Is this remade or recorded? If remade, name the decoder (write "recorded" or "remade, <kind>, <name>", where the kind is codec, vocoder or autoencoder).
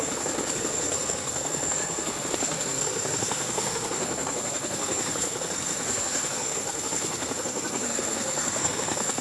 remade, codec, SNAC